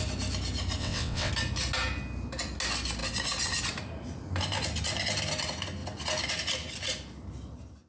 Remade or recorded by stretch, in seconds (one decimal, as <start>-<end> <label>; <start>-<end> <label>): 0.0-0.8 recorded; 0.8-1.3 remade; 1.3-7.9 recorded